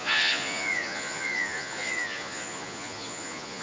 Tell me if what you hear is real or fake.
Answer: fake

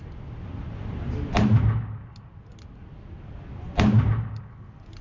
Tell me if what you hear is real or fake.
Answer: real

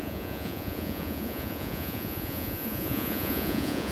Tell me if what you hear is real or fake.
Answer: fake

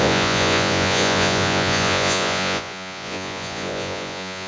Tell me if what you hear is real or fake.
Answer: fake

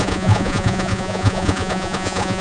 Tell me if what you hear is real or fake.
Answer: fake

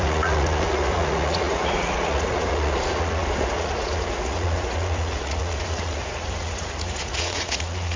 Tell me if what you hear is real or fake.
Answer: fake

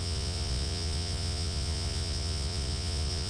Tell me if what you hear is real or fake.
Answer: fake